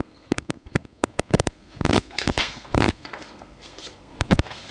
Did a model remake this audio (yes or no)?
yes